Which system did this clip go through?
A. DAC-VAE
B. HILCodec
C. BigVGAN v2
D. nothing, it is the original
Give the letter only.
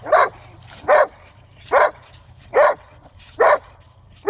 C